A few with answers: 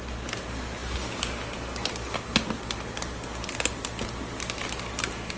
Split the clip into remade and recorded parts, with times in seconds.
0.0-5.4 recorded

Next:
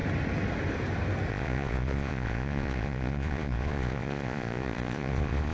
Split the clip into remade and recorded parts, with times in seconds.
0.0-1.3 recorded; 1.3-5.5 remade

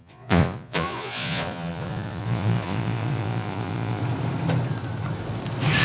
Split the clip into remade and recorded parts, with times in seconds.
0.0-4.0 remade; 4.0-5.8 recorded